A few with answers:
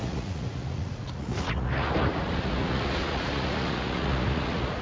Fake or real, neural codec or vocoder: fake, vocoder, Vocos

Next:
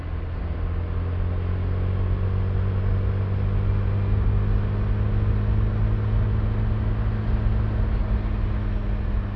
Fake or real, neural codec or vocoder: real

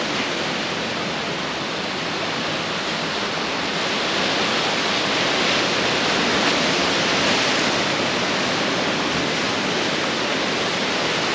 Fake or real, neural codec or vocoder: real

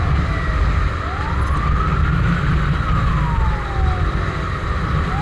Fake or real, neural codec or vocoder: real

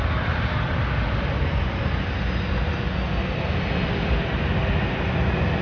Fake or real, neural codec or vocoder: real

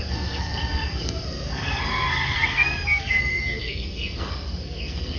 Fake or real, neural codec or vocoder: fake, codec, SNAC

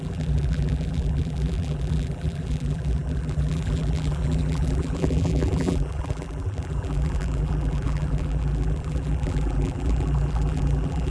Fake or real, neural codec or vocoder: fake, vocoder, BigVGAN v2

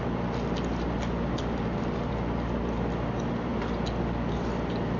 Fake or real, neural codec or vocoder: real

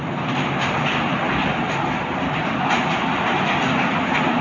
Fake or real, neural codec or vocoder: real